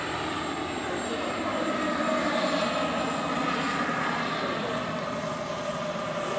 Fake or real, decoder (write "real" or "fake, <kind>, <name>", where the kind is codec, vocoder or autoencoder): real